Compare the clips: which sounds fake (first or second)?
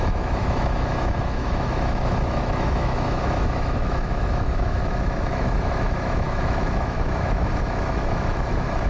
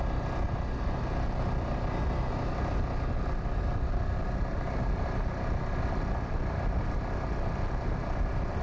first